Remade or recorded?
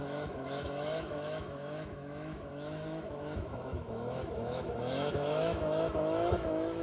remade